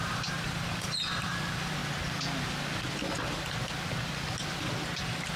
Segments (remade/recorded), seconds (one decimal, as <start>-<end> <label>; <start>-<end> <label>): 0.0-1.8 remade; 1.8-5.0 recorded; 5.0-5.4 remade